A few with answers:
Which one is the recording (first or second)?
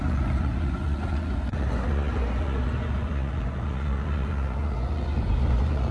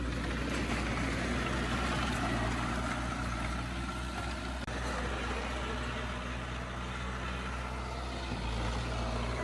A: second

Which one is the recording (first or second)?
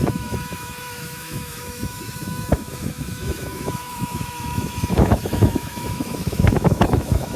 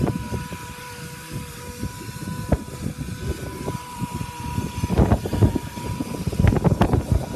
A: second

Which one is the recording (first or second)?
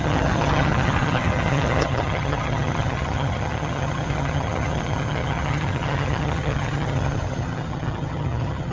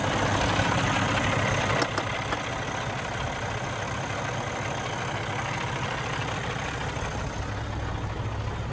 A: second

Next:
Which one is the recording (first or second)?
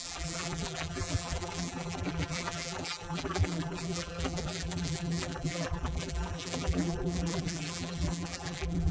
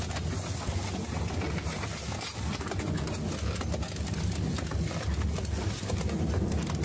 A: second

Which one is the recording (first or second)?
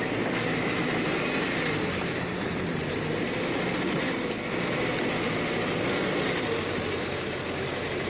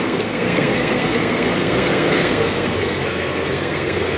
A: first